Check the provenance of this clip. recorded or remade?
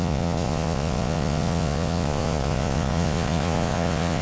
remade